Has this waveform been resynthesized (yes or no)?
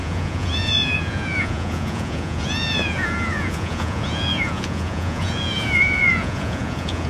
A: yes